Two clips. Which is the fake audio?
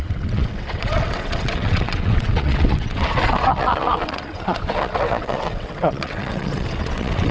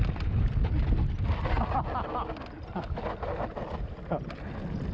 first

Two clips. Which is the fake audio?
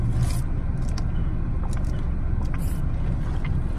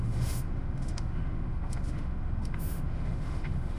second